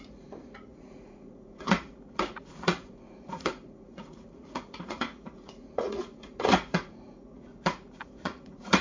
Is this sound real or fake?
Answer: fake